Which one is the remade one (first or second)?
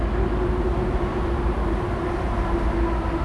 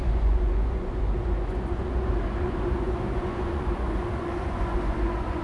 second